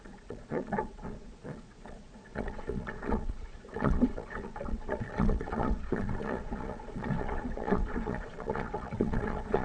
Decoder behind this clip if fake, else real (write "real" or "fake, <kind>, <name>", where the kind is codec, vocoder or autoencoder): fake, vocoder, Vocos